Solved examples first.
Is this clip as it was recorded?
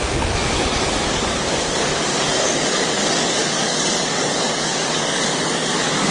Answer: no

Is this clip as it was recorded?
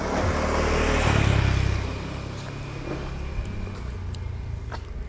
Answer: yes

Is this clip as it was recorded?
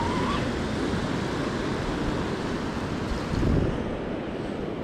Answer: yes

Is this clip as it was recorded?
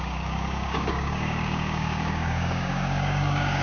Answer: no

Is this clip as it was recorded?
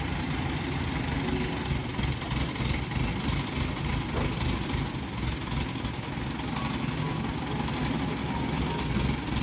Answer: yes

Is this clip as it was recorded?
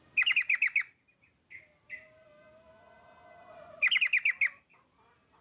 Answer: yes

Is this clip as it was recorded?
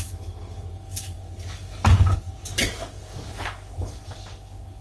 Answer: no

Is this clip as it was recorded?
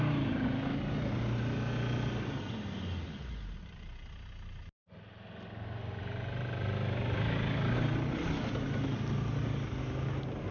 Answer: yes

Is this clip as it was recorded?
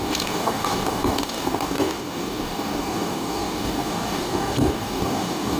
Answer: no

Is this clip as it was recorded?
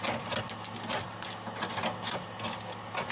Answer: yes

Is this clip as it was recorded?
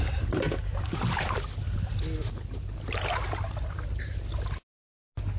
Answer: yes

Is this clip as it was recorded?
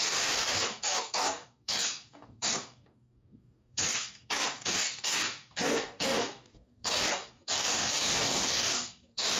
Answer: no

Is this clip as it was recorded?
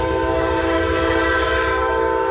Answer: no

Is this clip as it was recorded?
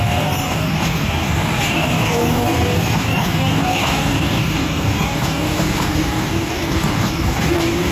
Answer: no